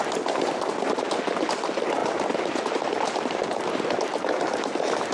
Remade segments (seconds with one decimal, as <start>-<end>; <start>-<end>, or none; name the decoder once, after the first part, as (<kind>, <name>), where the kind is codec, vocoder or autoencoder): none

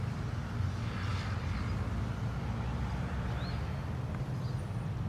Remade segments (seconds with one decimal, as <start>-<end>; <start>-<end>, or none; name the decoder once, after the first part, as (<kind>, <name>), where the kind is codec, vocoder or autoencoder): none

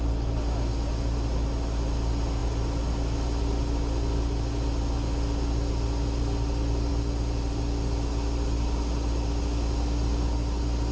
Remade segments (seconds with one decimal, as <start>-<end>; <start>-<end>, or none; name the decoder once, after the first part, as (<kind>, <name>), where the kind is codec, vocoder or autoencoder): none

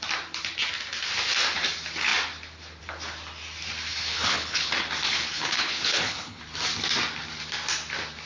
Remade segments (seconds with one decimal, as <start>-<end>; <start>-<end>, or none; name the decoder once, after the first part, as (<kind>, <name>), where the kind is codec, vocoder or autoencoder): 3.9-4.7 (codec, HILCodec); 5.2-6.4

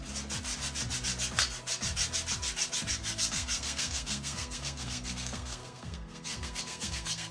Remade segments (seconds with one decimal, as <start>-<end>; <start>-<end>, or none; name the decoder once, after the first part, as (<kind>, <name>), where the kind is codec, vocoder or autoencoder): 3.0-7.3 (codec, SNAC)

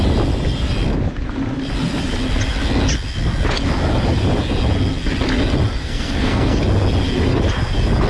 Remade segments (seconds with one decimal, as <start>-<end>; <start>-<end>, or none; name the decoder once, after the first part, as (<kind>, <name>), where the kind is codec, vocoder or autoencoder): 5.8-6.6 (codec, SNAC)